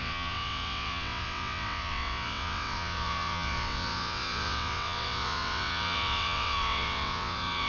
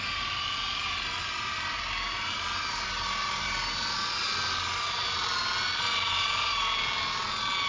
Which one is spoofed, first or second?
first